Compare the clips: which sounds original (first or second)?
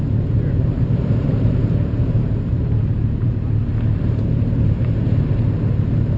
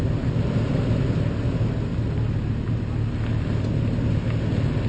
second